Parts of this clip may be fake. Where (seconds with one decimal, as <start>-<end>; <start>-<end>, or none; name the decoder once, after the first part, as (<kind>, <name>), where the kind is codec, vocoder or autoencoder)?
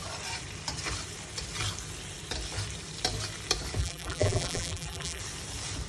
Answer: 3.8-5.2 (vocoder, BigVGAN v2)